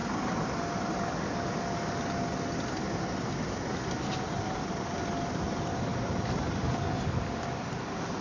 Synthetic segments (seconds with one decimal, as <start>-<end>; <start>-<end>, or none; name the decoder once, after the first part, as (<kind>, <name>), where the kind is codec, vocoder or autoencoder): none